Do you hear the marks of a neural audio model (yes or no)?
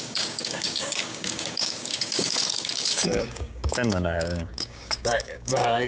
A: yes